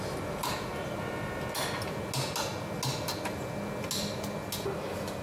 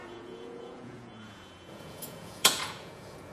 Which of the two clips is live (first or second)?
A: first